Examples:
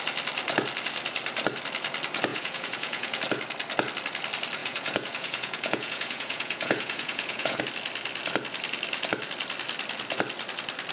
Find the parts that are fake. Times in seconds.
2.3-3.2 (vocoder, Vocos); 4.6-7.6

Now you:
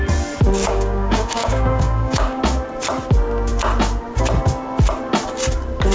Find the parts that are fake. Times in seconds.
0.6-2.4 (codec, DAC)

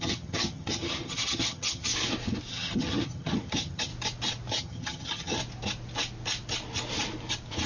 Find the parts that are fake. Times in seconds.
0.0-1.9 (vocoder, HiFi-GAN); 2.5-3.9; 4.6-5.4